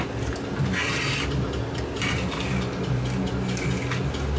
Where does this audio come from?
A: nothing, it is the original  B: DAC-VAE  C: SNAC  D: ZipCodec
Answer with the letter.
A